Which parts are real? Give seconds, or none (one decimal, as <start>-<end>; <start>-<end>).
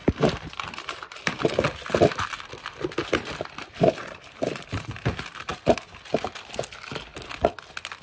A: 4.8-5.5; 6.1-8.0